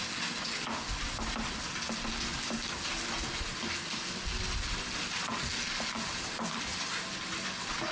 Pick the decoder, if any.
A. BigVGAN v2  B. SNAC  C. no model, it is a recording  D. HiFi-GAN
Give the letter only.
C